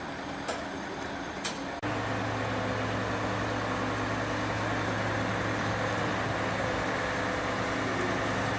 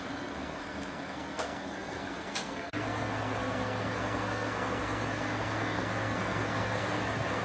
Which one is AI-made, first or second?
second